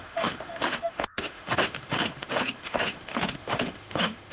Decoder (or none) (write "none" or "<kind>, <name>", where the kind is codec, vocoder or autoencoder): autoencoder, DAC-VAE